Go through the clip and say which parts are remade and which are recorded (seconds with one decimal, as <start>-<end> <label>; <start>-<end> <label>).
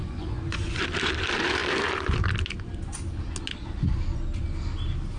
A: 0.0-0.8 remade; 0.8-5.2 recorded